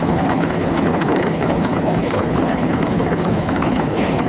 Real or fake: fake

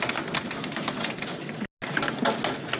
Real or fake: real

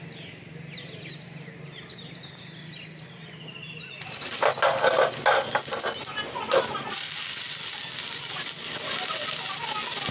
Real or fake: real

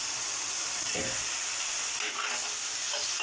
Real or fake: real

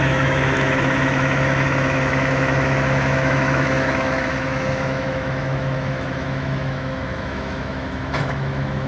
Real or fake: fake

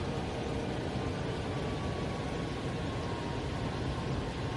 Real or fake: real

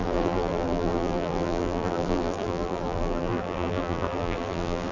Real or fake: fake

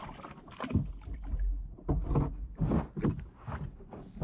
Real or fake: real